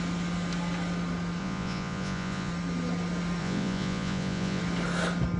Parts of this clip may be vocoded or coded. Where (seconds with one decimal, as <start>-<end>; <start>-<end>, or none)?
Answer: 1.4-2.5; 3.4-4.6